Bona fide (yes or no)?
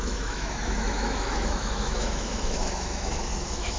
no